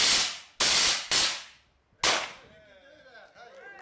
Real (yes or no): yes